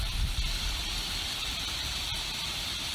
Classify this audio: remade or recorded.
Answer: recorded